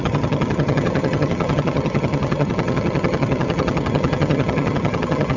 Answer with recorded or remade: remade